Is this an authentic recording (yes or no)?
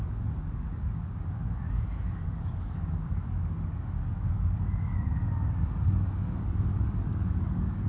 no